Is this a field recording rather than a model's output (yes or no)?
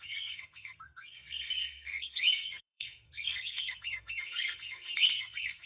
no